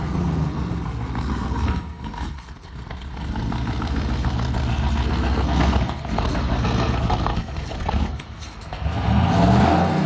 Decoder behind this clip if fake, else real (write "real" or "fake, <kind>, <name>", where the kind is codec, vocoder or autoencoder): fake, codec, SNAC